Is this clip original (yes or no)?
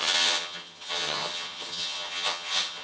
no